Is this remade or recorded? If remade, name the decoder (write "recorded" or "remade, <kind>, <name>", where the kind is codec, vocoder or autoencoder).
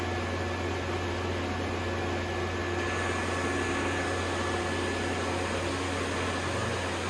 recorded